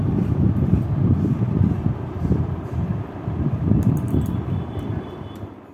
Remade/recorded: remade